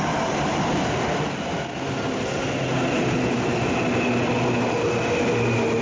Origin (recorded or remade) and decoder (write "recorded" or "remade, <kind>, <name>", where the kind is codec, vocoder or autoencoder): recorded